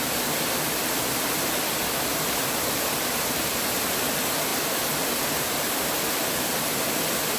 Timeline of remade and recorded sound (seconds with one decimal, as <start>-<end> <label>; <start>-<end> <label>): 0.0-7.4 recorded